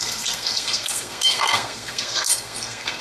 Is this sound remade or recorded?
remade